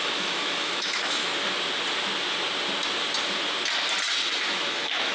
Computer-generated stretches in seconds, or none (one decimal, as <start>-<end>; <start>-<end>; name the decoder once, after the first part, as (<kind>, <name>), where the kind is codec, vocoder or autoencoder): 0.0-1.2 (autoencoder, DAC-VAE); 4.3-5.1